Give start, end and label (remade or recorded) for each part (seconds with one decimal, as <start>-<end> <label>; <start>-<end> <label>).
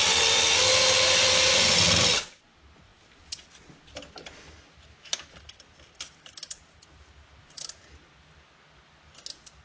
0.0-9.6 recorded